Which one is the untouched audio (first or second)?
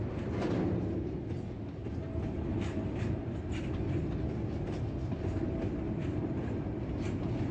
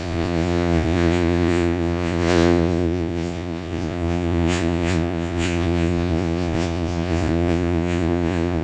first